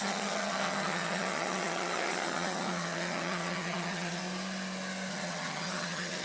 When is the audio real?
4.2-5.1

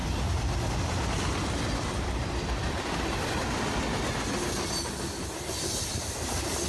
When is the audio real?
0.0-1.9; 3.4-6.7

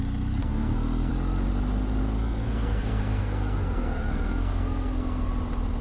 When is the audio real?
0.0-0.4; 1.1-2.0; 5.3-5.8